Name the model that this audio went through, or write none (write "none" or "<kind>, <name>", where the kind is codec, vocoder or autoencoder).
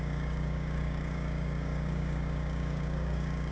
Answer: codec, DAC